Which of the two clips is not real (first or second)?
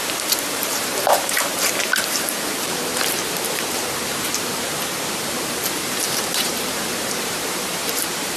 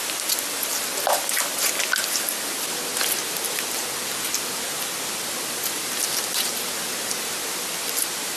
first